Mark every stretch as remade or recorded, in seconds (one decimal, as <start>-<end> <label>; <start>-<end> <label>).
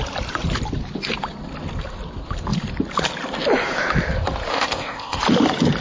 0.0-4.5 recorded; 4.5-5.2 remade; 5.2-5.8 recorded